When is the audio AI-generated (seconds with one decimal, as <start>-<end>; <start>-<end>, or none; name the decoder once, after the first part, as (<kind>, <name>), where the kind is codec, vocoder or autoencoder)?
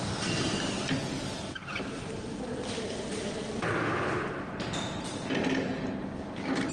1.6-3.4 (vocoder, BigVGAN v2)